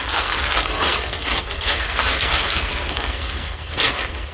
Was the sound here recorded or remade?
remade